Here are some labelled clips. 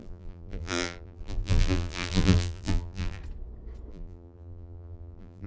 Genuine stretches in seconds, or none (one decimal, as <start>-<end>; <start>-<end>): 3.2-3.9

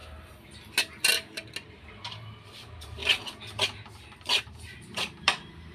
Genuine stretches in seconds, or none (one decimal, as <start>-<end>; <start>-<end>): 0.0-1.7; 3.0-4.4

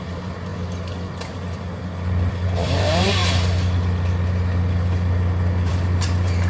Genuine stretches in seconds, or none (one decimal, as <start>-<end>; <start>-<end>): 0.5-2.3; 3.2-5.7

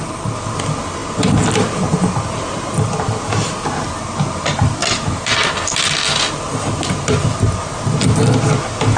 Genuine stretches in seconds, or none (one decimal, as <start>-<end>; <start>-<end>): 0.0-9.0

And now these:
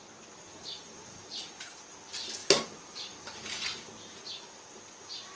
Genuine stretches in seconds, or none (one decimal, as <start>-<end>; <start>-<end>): 0.0-0.6; 1.8-2.4; 4.2-5.4